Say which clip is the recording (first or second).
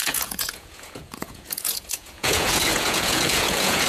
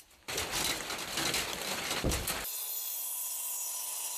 second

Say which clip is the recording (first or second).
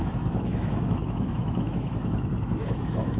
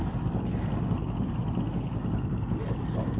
second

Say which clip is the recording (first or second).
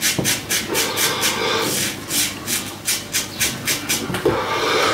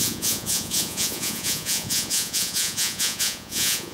first